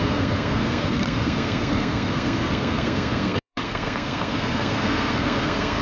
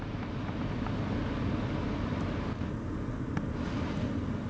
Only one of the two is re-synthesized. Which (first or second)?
first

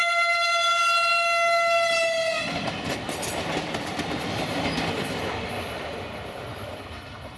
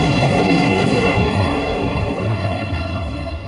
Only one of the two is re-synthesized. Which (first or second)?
second